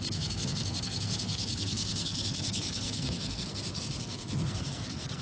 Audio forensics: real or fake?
fake